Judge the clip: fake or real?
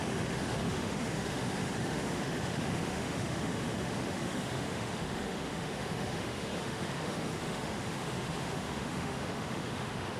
fake